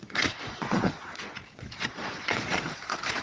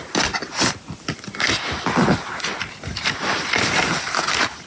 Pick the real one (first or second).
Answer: second